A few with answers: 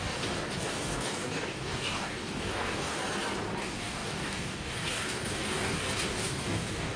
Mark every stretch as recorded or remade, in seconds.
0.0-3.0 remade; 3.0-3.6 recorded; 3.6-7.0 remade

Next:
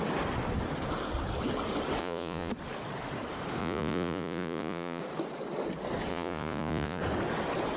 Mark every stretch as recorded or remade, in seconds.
0.0-2.0 recorded; 2.0-2.5 remade; 2.5-3.6 recorded; 3.6-5.0 remade; 5.0-6.1 recorded; 6.1-7.0 remade; 7.0-7.8 recorded

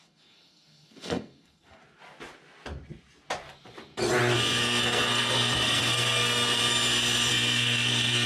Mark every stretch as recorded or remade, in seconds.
0.0-1.8 remade; 1.8-4.6 recorded; 4.6-6.6 remade; 6.6-7.3 recorded; 7.3-8.3 remade

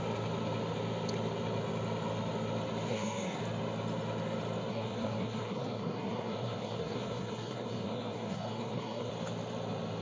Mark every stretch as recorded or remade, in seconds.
0.0-2.9 recorded; 2.9-3.4 remade; 3.4-4.7 recorded; 4.7-9.1 remade; 9.1-10.0 recorded

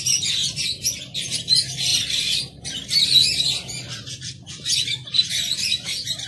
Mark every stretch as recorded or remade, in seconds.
0.0-6.3 recorded

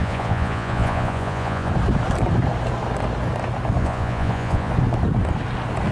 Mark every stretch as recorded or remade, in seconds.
0.0-1.7 remade; 1.7-3.8 recorded; 3.8-4.7 remade; 4.7-5.9 recorded